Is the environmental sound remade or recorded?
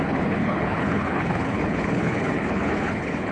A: remade